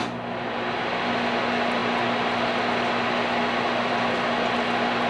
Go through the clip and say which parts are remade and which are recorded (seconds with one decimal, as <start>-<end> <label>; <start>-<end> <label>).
0.0-5.1 recorded